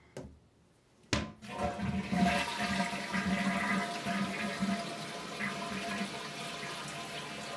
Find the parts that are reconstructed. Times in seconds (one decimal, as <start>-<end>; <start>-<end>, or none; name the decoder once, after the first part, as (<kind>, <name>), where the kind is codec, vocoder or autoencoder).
none

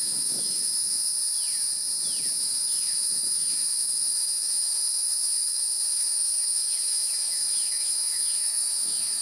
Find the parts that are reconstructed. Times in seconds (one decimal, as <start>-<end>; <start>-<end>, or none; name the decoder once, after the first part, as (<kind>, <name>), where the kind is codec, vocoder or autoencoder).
0.0-1.1 (autoencoder, DAC-VAE); 2.4-9.2